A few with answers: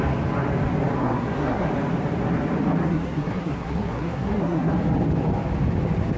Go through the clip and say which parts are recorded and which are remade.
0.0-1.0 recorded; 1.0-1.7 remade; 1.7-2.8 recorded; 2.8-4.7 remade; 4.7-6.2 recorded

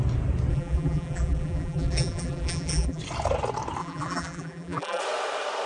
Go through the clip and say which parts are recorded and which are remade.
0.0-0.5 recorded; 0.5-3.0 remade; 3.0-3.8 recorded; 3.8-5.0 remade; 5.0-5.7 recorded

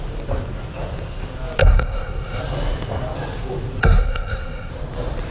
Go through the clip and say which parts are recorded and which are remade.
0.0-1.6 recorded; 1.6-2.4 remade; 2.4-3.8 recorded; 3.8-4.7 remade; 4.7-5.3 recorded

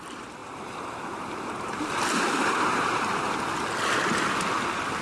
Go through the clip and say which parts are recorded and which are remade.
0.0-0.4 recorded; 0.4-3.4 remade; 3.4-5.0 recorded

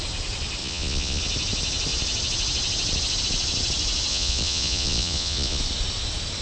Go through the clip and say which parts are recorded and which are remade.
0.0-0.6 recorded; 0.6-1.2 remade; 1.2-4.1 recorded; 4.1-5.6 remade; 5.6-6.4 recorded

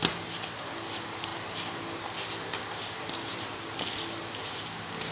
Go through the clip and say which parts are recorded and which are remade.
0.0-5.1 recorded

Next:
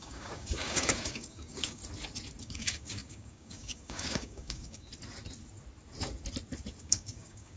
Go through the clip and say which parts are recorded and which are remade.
0.0-1.8 remade; 1.8-2.4 recorded; 2.4-4.9 remade; 4.9-6.8 recorded; 6.8-7.6 remade